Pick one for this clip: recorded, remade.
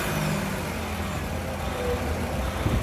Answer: recorded